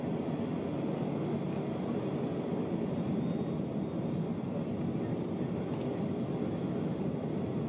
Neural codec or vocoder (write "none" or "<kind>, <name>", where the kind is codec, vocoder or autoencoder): none